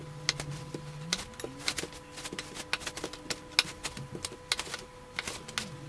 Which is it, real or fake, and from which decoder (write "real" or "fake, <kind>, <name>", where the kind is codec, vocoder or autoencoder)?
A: real